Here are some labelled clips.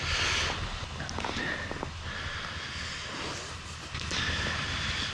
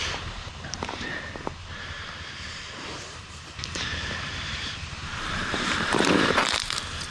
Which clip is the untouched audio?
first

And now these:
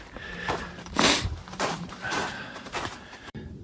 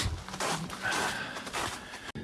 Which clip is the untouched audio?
second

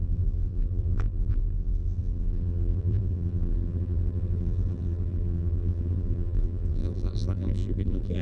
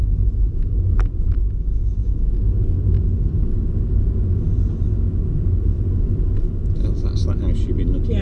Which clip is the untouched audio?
second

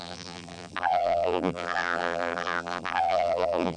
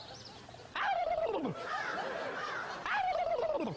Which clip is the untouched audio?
second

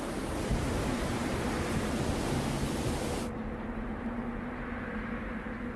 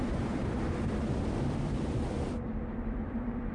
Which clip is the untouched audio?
first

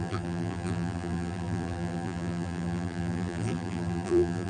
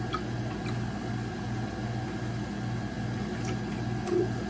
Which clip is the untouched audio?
second